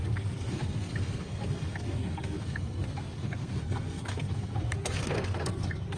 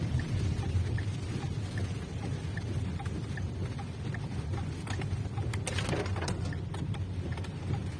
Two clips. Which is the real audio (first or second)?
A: second